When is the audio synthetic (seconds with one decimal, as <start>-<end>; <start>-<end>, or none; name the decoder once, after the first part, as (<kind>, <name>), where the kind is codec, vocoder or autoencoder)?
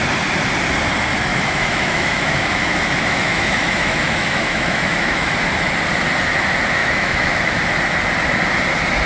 1.3-5.3 (autoencoder, DAC-VAE); 6.8-7.4